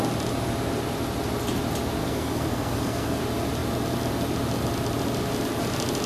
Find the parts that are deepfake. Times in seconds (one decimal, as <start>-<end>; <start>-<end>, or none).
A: 2.0-3.2